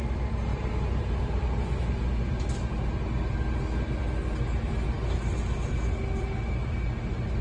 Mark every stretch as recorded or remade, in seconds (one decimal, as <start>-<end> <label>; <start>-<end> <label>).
0.0-0.5 recorded; 0.5-1.0 remade; 1.0-7.4 recorded